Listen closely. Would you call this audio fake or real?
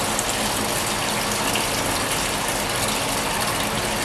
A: real